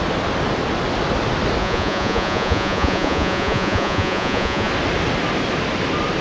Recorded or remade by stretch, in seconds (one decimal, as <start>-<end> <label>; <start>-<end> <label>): 0.0-1.6 recorded; 1.6-4.7 remade; 4.7-6.2 recorded